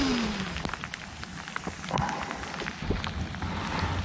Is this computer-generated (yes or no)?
no